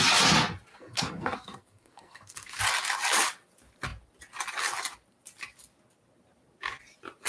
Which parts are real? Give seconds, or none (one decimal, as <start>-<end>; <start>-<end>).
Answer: 0.0-0.7; 2.6-7.3